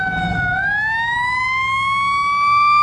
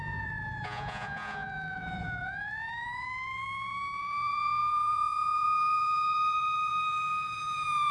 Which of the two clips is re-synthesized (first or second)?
second